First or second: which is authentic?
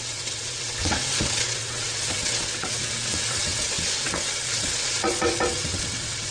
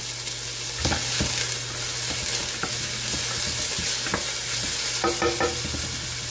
second